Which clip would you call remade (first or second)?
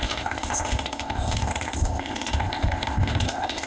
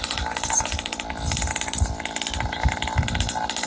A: first